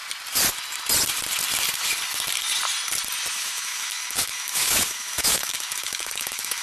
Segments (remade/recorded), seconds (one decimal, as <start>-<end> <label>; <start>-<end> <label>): 0.0-3.3 recorded; 3.3-6.6 remade